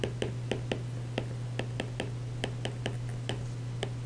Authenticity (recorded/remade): recorded